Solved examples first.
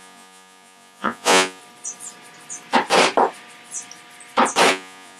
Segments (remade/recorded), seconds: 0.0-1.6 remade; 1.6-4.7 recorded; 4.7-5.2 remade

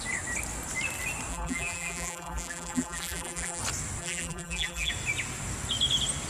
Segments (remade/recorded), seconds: 0.0-1.3 recorded; 1.3-3.6 remade; 3.6-4.0 recorded; 4.0-4.9 remade; 4.9-6.3 recorded